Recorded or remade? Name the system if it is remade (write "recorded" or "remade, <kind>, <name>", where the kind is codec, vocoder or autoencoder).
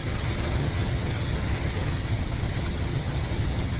remade, vocoder, HiFi-GAN